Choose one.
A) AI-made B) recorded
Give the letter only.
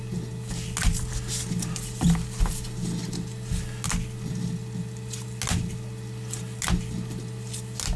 B